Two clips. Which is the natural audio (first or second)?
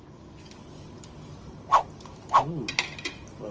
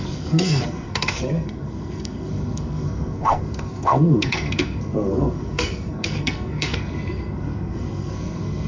first